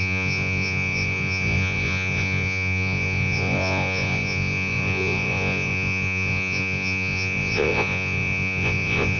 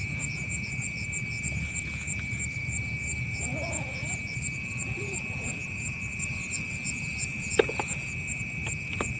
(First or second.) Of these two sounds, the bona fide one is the second